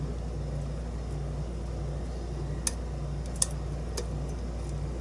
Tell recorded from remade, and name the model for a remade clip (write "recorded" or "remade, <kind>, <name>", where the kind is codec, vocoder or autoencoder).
recorded